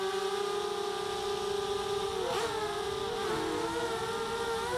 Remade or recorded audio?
recorded